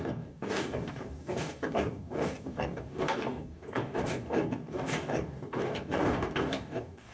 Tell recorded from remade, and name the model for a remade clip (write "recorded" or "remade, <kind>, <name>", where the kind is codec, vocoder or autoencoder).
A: remade, codec, DAC